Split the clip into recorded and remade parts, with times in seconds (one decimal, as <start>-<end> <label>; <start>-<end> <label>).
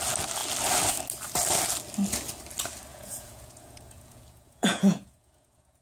0.0-2.9 recorded; 2.9-5.8 remade